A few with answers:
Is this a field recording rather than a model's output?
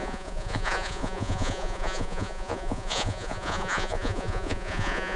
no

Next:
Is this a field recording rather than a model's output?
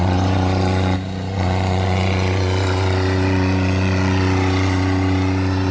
no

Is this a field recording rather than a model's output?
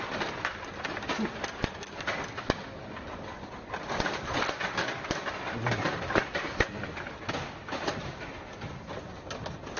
yes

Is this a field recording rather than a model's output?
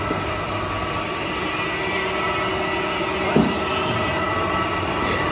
yes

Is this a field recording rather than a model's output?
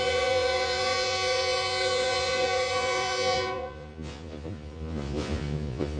no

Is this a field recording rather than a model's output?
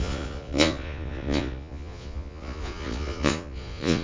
no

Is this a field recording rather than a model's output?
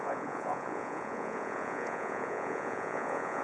no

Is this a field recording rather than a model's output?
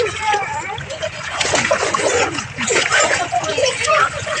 no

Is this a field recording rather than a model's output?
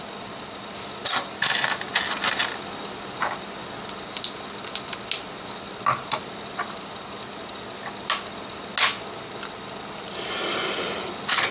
yes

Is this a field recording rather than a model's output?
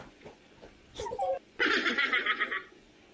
no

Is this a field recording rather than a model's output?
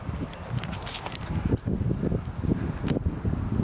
yes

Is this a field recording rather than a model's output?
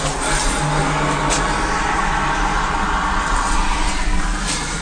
yes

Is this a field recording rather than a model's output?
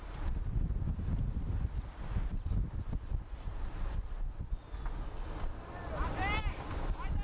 yes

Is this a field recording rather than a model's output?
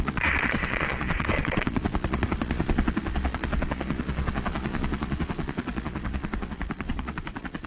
no